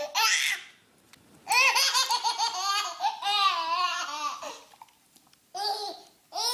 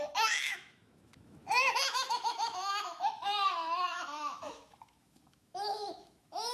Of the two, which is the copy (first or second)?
second